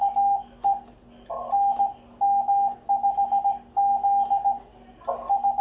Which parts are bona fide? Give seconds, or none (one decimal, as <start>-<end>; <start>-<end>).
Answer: 0.0-5.6